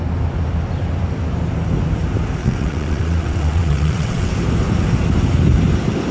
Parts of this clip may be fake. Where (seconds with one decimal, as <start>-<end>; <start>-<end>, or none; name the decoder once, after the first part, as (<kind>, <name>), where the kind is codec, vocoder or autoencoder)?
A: 2.4-4.3 (vocoder, WaveNeXt)